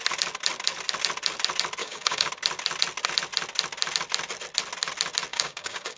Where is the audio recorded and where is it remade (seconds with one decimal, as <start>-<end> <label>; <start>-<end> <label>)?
0.0-1.8 recorded; 1.8-2.3 remade; 2.3-5.3 recorded; 5.3-6.0 remade

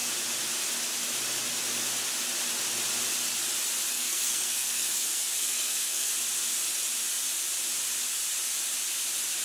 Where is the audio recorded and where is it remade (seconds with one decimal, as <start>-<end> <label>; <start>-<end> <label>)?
0.0-3.9 recorded; 3.9-6.1 remade; 6.1-9.4 recorded

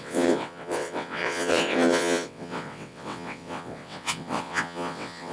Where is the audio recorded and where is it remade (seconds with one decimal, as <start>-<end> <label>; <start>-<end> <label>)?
0.0-5.3 remade

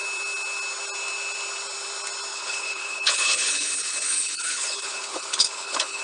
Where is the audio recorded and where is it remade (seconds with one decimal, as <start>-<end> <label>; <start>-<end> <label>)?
0.0-2.3 recorded; 2.3-6.0 remade

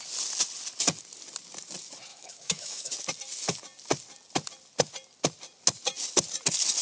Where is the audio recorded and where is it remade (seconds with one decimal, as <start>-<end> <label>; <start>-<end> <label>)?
0.0-2.1 recorded; 2.1-2.9 remade; 2.9-6.8 recorded

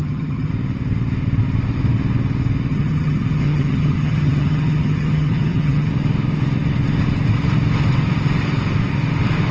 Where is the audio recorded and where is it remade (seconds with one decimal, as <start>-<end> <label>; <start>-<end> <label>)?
0.0-0.5 remade; 0.5-2.7 recorded; 2.7-5.9 remade; 5.9-9.5 recorded

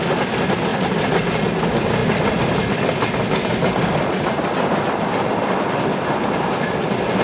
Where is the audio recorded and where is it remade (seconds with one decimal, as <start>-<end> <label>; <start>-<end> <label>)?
0.0-0.7 recorded; 0.7-1.5 remade; 1.5-5.9 recorded; 5.9-6.8 remade; 6.8-7.2 recorded

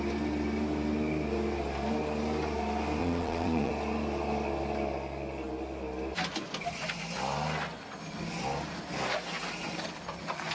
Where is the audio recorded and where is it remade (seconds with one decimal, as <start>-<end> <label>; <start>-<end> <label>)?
0.0-3.0 recorded; 3.0-3.7 remade; 3.7-10.5 recorded